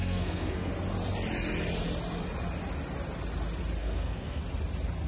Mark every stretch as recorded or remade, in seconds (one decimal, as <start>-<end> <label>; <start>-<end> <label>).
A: 0.0-0.7 remade; 0.7-3.8 recorded; 3.8-4.4 remade; 4.4-5.1 recorded